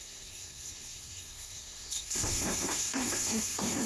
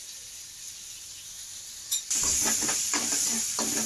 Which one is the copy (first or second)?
first